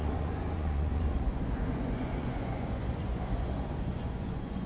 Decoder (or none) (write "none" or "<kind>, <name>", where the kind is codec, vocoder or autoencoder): vocoder, Vocos